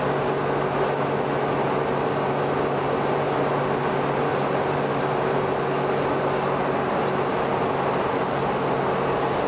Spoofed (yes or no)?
no